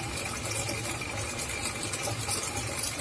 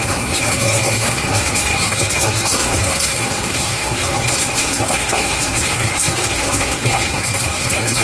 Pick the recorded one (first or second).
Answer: first